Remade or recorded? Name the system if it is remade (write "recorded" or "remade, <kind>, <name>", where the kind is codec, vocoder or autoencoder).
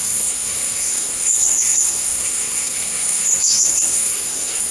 remade, codec, SNAC